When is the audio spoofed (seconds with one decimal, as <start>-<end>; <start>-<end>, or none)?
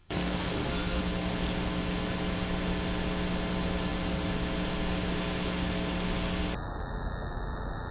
0.0-1.0